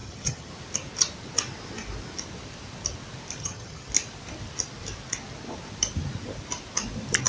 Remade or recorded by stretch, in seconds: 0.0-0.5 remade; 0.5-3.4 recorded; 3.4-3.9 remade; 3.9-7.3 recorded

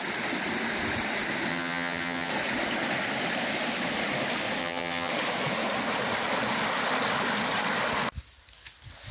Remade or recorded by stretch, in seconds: 0.0-1.5 recorded; 1.5-2.3 remade; 2.3-4.6 recorded; 4.6-5.1 remade; 5.1-9.1 recorded

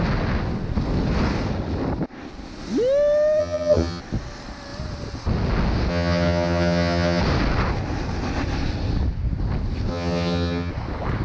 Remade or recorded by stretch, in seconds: 0.0-3.4 recorded; 3.4-4.0 remade; 4.0-5.9 recorded; 5.9-7.2 remade; 7.2-9.9 recorded; 9.9-10.7 remade; 10.7-11.2 recorded